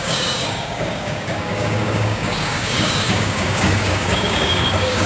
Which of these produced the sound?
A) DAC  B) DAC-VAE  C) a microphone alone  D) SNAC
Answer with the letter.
A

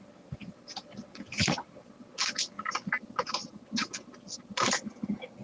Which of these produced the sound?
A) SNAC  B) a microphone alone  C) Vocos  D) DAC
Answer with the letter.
B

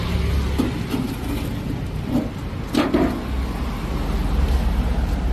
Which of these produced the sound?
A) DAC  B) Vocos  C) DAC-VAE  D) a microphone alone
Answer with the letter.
D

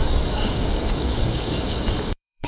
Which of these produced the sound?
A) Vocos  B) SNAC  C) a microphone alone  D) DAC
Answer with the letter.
D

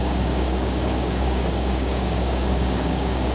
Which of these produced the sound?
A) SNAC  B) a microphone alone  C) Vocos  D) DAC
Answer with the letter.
D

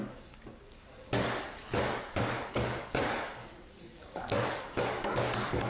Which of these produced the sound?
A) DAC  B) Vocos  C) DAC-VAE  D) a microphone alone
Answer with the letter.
A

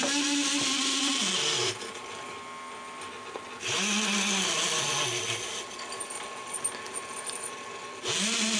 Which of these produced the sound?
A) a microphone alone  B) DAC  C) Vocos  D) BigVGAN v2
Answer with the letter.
A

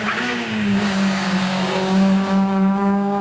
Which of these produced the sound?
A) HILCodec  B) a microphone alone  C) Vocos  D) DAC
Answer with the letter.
D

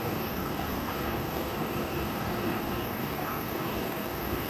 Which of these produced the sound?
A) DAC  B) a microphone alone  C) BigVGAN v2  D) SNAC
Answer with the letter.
A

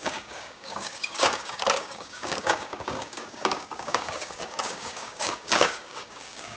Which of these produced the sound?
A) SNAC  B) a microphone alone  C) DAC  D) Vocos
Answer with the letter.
C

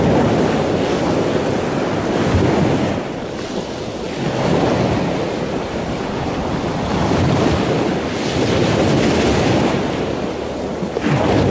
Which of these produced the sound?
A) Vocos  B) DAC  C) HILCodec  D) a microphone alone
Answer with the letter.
D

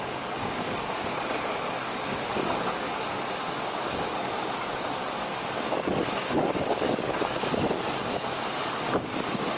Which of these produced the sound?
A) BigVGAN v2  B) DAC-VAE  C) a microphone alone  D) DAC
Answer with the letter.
D